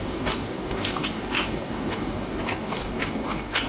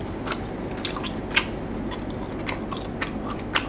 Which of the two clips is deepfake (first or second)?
first